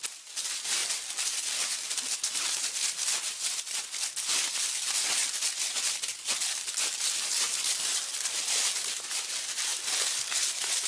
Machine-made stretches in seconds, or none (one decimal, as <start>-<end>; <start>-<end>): 0.0-5.2; 8.7-9.7; 10.4-10.9